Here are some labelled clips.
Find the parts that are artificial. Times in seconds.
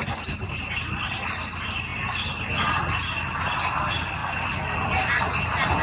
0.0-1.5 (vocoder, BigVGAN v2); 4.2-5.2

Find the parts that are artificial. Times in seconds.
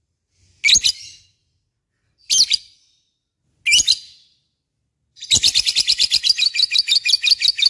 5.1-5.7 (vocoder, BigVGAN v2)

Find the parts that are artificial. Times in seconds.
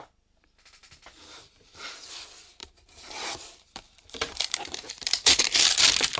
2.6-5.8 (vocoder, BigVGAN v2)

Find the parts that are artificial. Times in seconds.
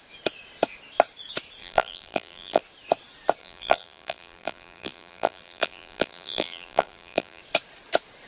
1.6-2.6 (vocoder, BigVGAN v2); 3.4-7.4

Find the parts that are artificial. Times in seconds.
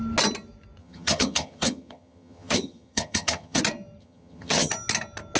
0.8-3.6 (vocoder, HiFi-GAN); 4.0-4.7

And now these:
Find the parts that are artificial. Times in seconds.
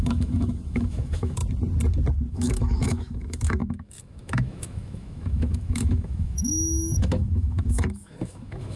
0.0-1.4 (autoencoder, DAC-VAE); 2.3-8.8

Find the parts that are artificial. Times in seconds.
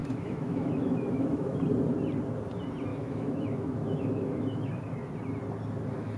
0.0-1.6 (autoencoder, DAC-VAE); 2.9-4.9